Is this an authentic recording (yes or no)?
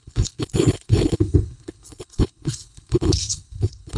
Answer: no